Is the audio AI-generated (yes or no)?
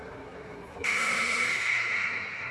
yes